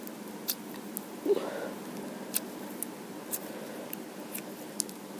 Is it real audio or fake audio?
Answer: real